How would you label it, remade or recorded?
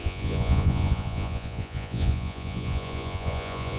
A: remade